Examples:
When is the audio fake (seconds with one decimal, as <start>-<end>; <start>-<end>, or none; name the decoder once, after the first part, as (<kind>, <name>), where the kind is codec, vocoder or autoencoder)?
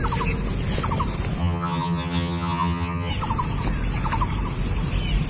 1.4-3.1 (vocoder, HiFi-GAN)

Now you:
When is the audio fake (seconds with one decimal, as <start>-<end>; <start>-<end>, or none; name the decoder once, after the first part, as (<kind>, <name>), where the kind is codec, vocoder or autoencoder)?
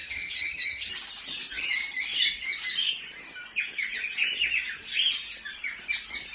0.0-0.9 (vocoder, HiFi-GAN)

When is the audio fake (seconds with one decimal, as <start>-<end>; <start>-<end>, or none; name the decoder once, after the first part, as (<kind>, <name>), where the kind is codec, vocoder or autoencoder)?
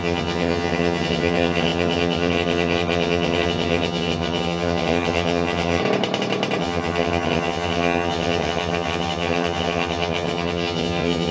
0.0-5.8 (vocoder, HiFi-GAN); 6.6-11.3